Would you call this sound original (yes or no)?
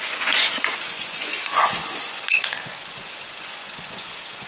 no